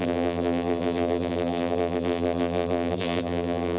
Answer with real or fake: fake